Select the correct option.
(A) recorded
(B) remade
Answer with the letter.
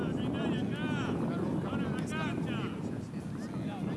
A